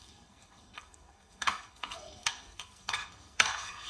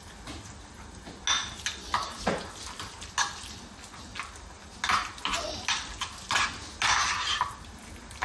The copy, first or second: first